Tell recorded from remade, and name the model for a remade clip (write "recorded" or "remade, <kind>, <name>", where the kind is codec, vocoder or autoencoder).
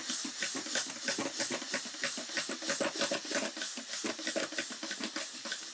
recorded